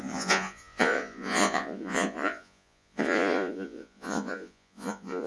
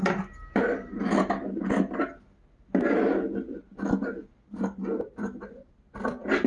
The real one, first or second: second